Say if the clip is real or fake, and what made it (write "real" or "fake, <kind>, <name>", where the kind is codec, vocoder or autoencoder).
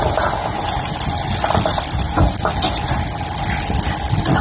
real